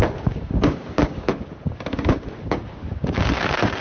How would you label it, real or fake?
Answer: fake